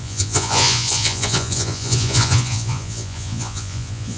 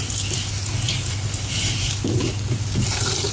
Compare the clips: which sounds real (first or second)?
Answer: second